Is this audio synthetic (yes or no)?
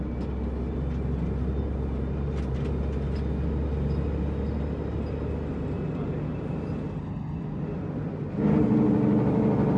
no